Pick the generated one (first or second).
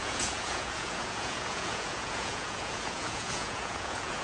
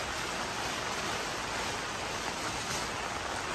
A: first